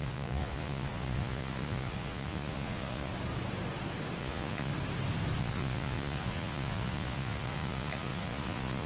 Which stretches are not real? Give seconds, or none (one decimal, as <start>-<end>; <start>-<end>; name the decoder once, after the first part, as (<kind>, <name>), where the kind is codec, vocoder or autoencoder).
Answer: 0.0-3.1 (vocoder, Vocos); 4.2-4.7; 5.4-8.9